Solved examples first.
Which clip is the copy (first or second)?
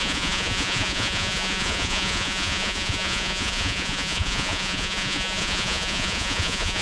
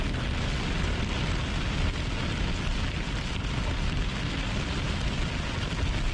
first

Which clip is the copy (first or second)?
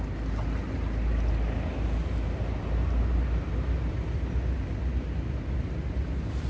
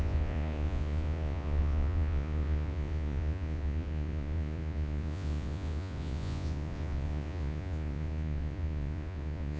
second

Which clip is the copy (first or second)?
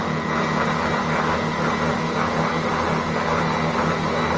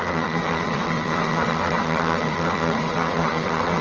second